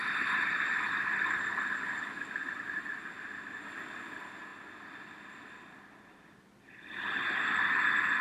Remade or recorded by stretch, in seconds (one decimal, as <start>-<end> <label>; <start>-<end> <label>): 0.0-1.4 remade; 1.4-8.2 recorded